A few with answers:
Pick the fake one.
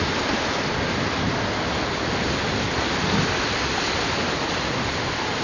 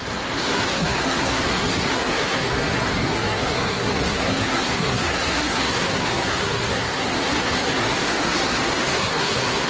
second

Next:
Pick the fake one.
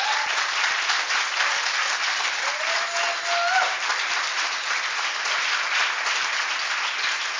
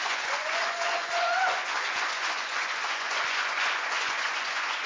second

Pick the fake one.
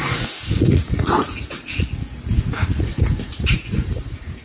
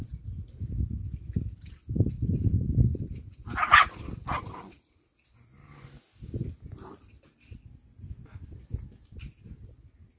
first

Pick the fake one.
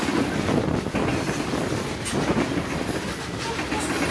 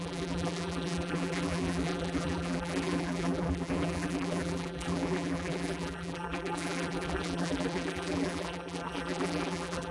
second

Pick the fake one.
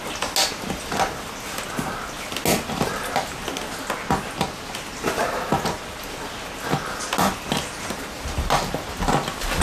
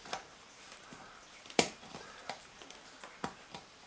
second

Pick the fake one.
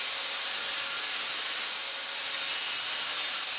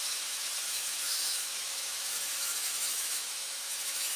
second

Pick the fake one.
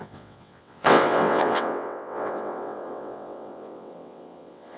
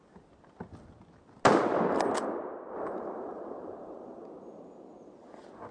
first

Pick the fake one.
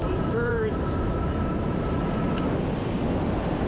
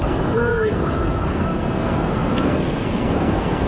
second